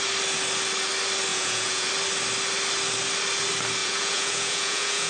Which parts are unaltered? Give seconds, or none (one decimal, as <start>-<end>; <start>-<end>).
0.0-1.3; 1.9-3.8